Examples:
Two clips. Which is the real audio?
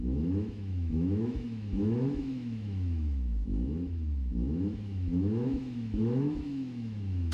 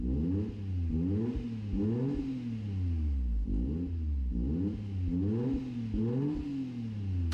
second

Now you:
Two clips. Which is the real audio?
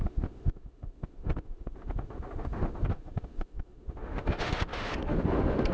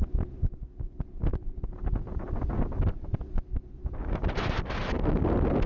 second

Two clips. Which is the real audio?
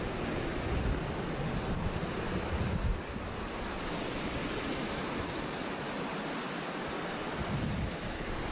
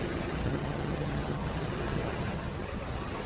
first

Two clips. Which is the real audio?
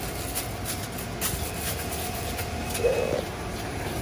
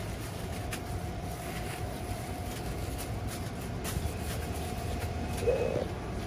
first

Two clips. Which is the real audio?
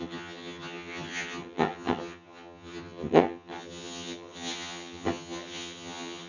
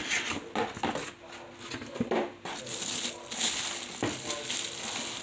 second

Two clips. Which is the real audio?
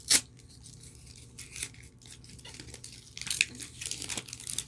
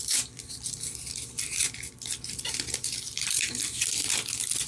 first